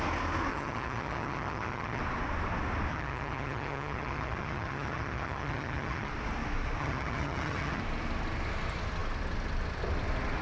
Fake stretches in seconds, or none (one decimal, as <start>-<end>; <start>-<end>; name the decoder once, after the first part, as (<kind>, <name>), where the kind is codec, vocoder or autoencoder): 0.5-2.0 (vocoder, HiFi-GAN); 2.9-6.1; 6.8-7.8